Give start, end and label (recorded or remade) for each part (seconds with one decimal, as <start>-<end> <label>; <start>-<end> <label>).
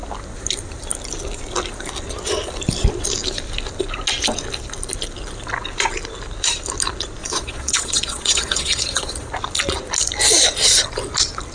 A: 0.0-7.2 recorded; 7.2-9.3 remade; 9.3-11.5 recorded